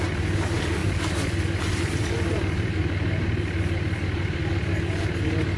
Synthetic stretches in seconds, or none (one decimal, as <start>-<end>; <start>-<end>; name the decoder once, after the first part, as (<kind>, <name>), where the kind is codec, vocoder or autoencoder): 0.0-0.8 (vocoder, BigVGAN v2); 1.6-4.4